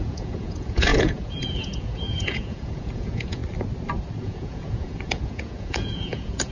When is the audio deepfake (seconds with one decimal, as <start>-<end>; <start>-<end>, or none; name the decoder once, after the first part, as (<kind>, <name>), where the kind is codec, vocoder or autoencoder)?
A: 0.0-3.4 (vocoder, Vocos); 4.2-6.5